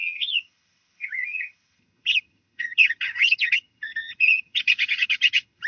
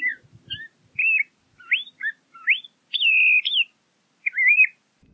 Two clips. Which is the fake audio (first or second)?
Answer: first